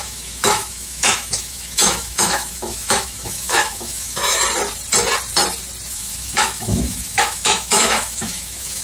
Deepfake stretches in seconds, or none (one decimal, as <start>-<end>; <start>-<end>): 0.0-4.4; 5.9-8.8